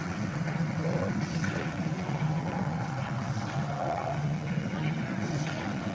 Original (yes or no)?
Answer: no